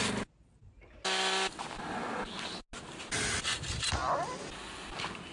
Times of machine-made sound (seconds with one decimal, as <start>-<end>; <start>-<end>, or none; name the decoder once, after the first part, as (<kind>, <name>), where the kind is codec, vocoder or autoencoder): none